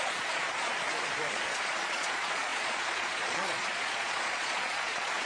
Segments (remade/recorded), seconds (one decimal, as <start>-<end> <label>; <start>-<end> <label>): 0.0-0.7 remade; 0.7-1.3 recorded; 1.3-5.3 remade